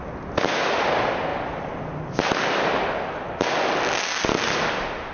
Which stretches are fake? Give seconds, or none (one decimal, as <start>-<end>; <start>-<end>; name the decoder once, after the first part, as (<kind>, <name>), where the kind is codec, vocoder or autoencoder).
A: none

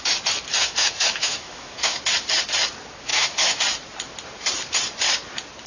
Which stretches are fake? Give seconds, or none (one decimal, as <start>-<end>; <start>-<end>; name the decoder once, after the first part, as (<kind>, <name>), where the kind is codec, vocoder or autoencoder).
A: 0.6-2.0 (autoencoder, DAC-VAE); 3.1-3.6

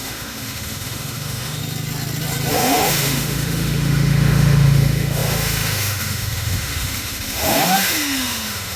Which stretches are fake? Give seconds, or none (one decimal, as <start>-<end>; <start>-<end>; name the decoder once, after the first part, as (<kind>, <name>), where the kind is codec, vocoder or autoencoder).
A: 0.0-1.6 (autoencoder, DAC-VAE); 2.5-8.8

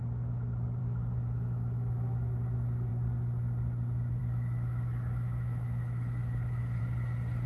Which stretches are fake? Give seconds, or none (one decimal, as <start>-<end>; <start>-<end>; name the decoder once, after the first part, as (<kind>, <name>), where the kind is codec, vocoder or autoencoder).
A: 0.8-2.9 (autoencoder, DAC-VAE); 4.2-6.8

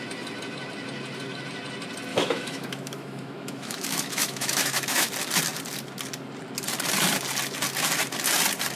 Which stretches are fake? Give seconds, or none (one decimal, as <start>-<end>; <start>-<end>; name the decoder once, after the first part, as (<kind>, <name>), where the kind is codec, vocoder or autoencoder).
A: 2.1-5.1 (autoencoder, DAC-VAE)